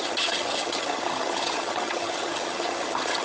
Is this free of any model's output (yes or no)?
no